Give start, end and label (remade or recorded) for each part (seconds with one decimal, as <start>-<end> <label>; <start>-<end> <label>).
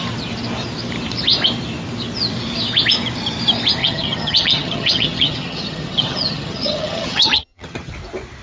0.0-3.8 recorded; 3.8-7.9 remade; 7.9-8.4 recorded